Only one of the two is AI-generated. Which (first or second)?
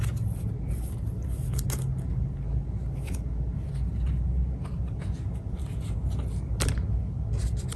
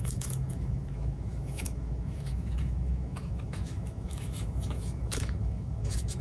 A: second